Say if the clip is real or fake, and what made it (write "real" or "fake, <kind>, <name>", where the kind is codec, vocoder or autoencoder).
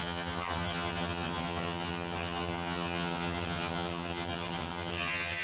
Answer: fake, vocoder, HiFi-GAN